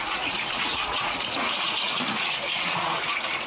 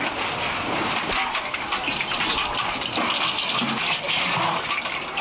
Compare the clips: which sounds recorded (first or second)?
second